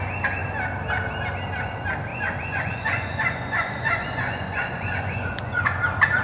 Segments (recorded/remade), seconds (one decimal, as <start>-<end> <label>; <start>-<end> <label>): 0.0-2.1 recorded; 2.1-5.8 remade; 5.8-6.2 recorded